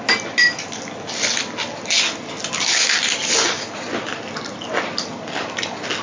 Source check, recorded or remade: recorded